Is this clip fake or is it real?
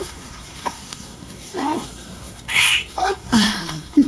fake